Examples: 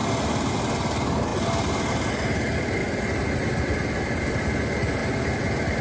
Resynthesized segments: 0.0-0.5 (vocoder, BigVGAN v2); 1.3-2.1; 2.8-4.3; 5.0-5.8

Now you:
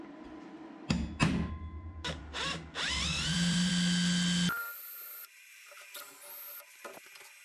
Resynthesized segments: 1.1-3.7 (vocoder, BigVGAN v2); 5.5-6.1

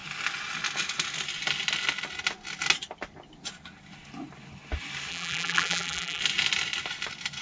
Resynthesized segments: 5.1-6.2 (vocoder, BigVGAN v2)

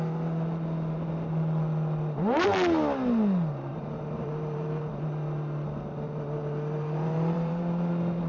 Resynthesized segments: 3.7-4.9 (vocoder, BigVGAN v2); 6.4-8.3

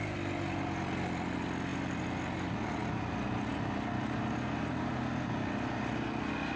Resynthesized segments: none

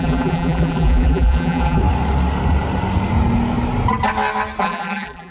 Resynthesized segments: 0.0-1.8 (vocoder, BigVGAN v2); 4.6-5.3

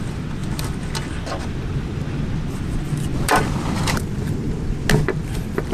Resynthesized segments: 3.1-4.9 (vocoder, BigVGAN v2)